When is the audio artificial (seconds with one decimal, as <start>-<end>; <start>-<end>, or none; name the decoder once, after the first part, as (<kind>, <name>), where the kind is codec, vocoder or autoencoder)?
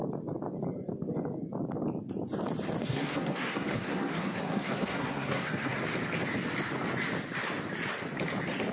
2.8-5.8 (codec, SNAC)